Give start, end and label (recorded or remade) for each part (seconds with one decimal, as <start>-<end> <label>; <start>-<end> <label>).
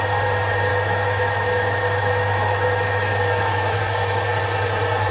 0.0-0.7 recorded; 0.7-3.8 remade; 3.8-5.1 recorded